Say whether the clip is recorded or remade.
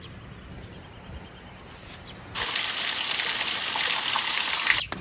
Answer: recorded